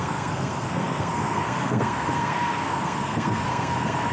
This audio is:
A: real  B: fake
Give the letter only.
B